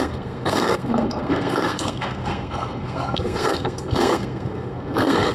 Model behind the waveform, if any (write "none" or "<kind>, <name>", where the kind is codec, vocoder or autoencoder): codec, SNAC